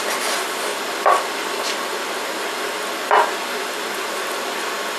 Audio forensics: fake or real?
real